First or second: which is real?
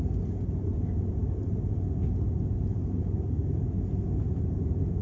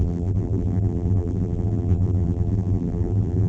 first